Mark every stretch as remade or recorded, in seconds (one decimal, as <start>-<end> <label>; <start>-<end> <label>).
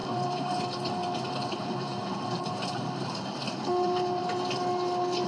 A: 0.0-0.6 remade; 0.6-1.0 recorded; 1.0-4.2 remade; 4.2-5.3 recorded